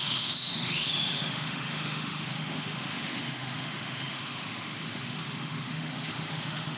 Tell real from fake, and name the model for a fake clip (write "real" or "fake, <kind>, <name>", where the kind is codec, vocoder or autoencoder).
fake, autoencoder, DAC-VAE